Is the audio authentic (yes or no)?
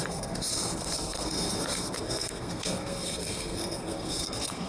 no